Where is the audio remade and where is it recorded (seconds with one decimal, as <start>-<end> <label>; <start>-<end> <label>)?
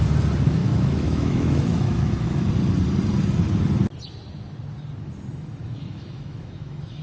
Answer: 0.0-0.6 recorded; 0.6-2.5 remade; 2.5-5.3 recorded; 5.3-7.0 remade